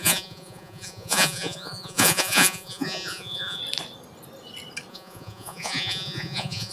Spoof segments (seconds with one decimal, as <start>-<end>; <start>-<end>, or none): 0.0-3.6; 4.9-6.7

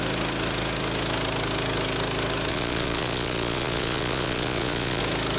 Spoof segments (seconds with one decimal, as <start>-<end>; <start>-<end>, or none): 2.5-5.0

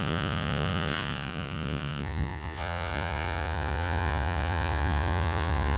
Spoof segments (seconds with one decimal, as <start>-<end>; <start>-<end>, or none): 0.0-5.8

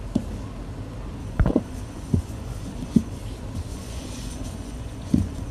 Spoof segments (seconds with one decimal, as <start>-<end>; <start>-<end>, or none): 1.2-3.2; 3.7-5.5

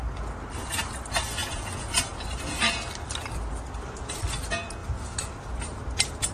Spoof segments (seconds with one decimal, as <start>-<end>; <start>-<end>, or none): 1.4-2.6